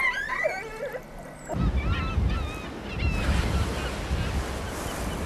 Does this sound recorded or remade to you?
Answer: recorded